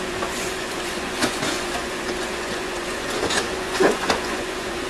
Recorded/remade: remade